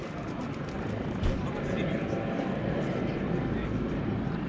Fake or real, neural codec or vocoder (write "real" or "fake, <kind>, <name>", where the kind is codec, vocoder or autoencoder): real